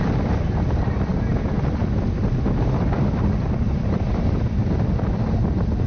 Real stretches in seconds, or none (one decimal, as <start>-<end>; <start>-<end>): 0.0-5.9